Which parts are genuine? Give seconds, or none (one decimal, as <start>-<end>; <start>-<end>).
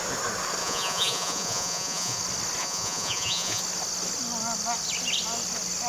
0.0-0.6; 2.2-2.6; 3.6-5.9